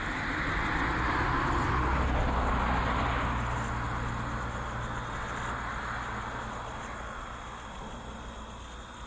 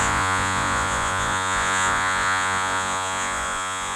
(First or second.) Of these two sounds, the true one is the first